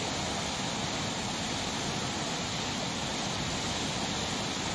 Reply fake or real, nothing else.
real